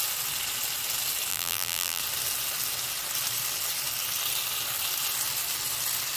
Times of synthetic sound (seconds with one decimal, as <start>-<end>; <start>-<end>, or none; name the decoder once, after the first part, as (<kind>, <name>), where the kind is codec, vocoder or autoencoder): 1.3-2.0 (vocoder, BigVGAN v2)